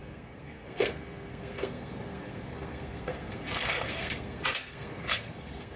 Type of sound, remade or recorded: remade